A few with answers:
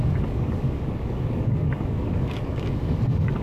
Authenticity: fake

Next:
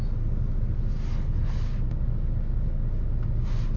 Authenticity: real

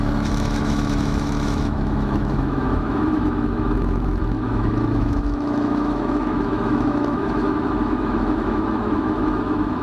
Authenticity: fake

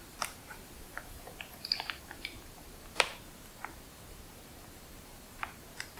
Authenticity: fake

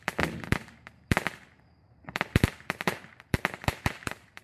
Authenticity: fake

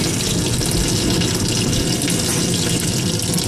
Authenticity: real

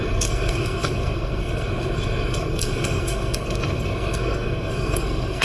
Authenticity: fake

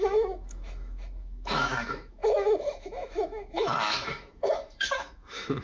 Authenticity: fake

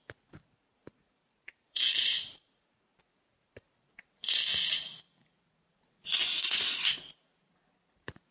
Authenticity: fake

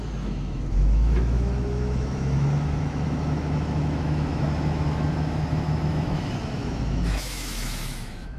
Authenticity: fake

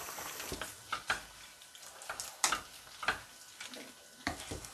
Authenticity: real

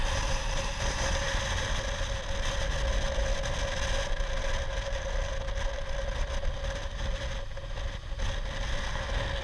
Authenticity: real